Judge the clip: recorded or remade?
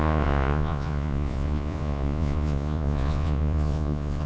remade